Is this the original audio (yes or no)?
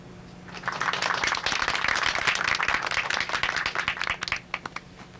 yes